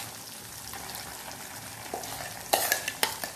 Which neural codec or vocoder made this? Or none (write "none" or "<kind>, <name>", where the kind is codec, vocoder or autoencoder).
none